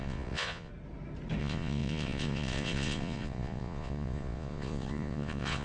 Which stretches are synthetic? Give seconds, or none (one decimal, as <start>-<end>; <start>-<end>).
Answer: 0.0-0.7; 1.4-5.6